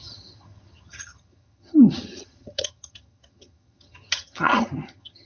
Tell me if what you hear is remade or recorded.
remade